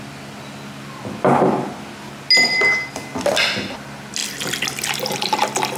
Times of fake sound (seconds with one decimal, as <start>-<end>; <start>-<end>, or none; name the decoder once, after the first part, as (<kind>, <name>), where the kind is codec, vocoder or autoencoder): none